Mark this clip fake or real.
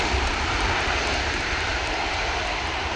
fake